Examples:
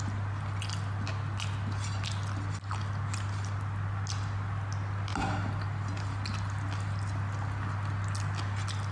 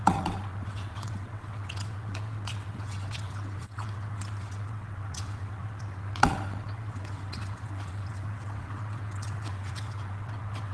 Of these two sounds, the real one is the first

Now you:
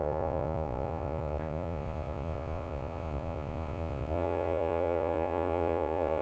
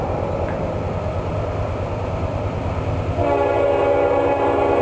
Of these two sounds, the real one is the second